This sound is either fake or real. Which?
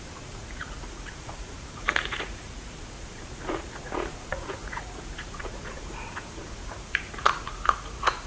fake